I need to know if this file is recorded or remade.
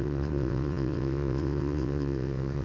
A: remade